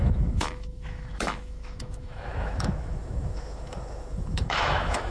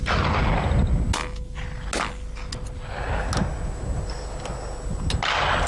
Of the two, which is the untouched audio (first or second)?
second